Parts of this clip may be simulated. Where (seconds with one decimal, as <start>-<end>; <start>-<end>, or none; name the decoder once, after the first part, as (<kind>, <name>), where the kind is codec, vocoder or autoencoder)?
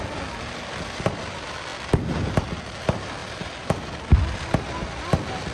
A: 0.0-1.7 (vocoder, BigVGAN v2); 2.4-5.5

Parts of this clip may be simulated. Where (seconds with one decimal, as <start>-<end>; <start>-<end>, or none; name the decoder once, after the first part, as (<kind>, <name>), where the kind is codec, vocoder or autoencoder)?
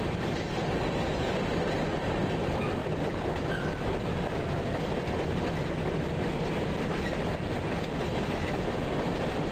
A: none